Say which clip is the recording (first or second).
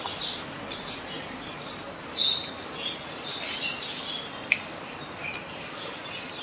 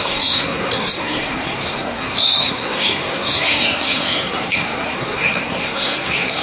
first